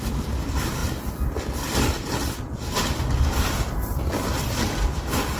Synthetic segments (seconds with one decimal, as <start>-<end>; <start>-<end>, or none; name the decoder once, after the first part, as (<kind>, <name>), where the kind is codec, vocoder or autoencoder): none